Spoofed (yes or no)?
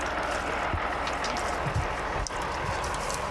no